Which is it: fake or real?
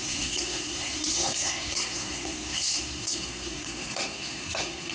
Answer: fake